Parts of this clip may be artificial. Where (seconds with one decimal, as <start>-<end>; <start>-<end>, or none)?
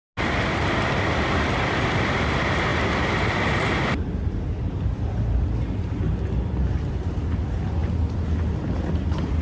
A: none